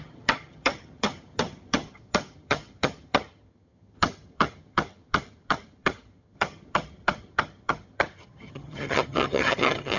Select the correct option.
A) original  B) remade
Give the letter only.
B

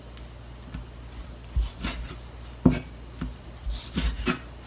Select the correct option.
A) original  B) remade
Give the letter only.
A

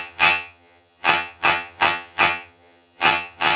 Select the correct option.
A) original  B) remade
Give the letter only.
B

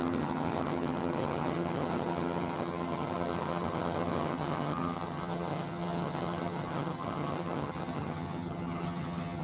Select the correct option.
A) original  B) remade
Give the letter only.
B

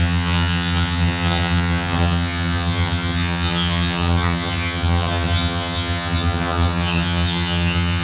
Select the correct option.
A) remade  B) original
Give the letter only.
A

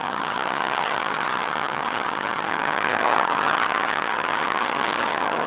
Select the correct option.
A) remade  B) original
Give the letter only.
A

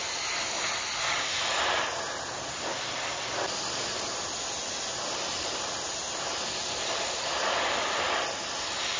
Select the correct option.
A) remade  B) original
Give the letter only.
B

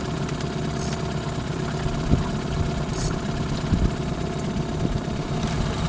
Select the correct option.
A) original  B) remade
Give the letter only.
A